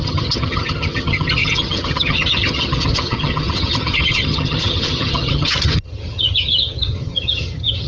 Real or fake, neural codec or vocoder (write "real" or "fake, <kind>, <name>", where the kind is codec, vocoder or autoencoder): fake, vocoder, HiFi-GAN